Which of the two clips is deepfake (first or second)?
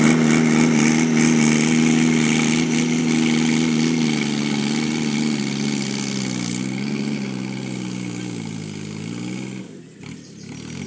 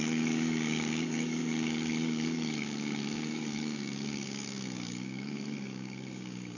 second